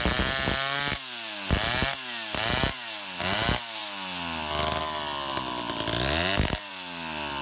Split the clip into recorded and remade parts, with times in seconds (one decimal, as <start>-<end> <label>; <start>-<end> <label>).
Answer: 0.0-7.4 recorded